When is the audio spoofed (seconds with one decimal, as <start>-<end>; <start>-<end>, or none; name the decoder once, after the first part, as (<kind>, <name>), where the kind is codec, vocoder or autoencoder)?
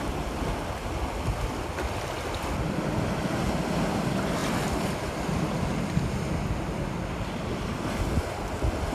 4.4-5.7 (vocoder, BigVGAN v2)